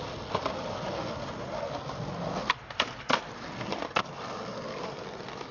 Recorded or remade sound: recorded